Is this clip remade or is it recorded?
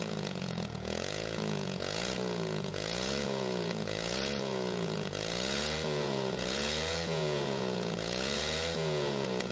remade